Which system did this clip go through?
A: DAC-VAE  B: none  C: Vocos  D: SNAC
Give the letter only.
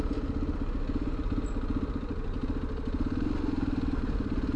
B